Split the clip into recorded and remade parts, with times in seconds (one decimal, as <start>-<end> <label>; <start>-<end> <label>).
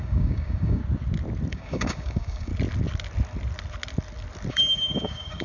0.0-0.8 remade; 0.8-1.5 recorded; 1.5-2.5 remade; 2.5-4.5 recorded; 4.5-5.4 remade